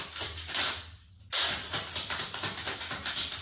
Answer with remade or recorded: recorded